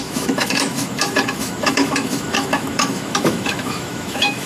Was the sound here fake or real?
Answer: fake